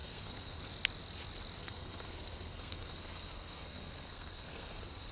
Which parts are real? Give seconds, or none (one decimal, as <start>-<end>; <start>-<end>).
0.6-1.6